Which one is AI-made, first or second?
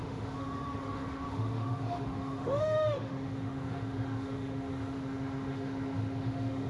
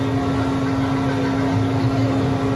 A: first